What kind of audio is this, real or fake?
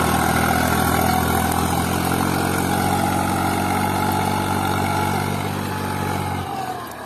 real